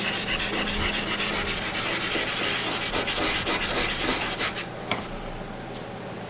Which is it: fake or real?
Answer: real